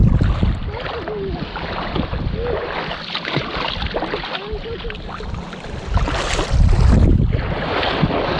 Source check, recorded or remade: recorded